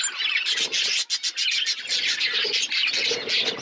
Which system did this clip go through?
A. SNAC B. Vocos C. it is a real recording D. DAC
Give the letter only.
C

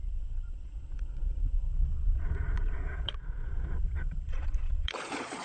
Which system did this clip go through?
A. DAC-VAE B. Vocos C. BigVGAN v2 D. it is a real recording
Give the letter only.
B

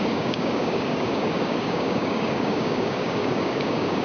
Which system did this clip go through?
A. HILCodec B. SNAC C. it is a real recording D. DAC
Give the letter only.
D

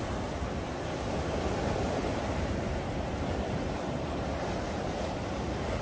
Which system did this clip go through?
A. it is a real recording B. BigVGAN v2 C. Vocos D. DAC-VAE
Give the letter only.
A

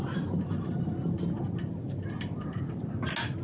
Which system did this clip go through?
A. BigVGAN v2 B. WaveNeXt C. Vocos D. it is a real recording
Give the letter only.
D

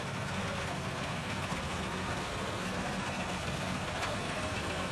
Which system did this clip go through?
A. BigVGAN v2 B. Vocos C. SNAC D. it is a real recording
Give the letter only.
C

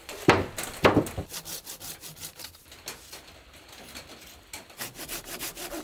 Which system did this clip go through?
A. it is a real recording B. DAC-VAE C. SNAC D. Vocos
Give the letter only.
A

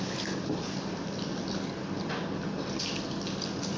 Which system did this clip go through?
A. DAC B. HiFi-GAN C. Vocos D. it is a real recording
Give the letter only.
D